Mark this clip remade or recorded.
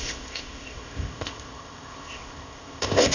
remade